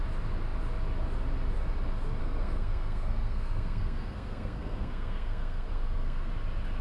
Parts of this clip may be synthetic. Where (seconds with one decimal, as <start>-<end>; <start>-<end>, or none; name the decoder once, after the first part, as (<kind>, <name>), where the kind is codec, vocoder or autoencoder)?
2.2-6.3 (codec, SNAC)